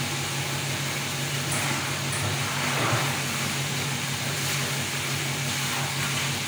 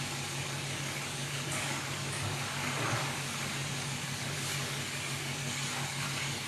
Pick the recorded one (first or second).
first